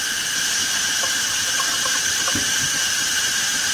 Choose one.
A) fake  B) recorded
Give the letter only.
A